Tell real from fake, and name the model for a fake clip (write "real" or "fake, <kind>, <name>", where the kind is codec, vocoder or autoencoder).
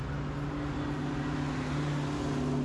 real